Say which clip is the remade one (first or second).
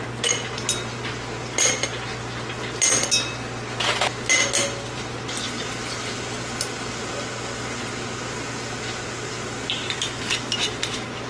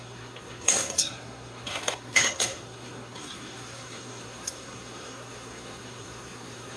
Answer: second